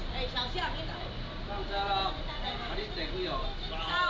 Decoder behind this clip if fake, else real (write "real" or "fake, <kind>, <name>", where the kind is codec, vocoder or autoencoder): real